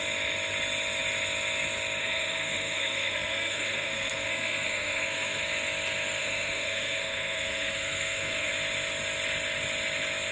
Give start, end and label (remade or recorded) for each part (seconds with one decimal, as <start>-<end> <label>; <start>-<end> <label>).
0.0-2.0 recorded; 2.0-5.4 remade; 5.4-6.2 recorded; 6.2-8.5 remade; 8.5-10.3 recorded